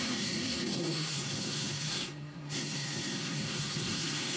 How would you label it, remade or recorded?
remade